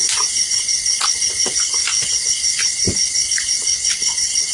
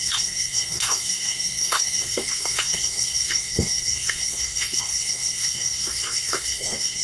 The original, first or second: first